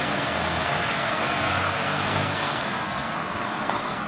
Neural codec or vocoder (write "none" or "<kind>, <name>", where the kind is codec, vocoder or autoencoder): codec, SNAC